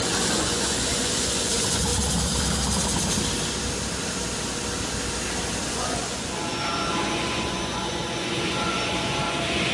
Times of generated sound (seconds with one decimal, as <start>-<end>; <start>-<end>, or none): 0.0-1.9; 5.7-9.7